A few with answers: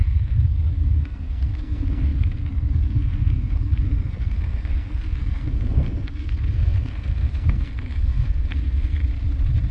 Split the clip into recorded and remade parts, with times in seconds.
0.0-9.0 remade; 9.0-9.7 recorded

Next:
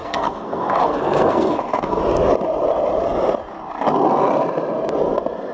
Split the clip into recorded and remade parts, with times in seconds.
0.0-2.0 remade; 2.0-5.5 recorded

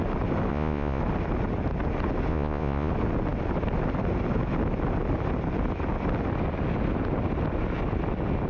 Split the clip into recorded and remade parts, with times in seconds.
0.0-0.5 recorded; 0.5-1.0 remade; 1.0-2.3 recorded; 2.3-2.9 remade; 2.9-8.5 recorded

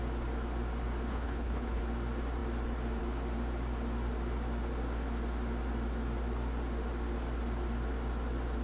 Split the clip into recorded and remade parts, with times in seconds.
0.0-1.1 recorded; 1.1-1.8 remade; 1.8-8.6 recorded

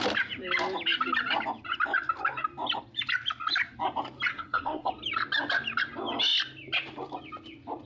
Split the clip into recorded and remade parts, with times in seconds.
0.0-4.3 recorded; 4.3-4.9 remade; 4.9-7.9 recorded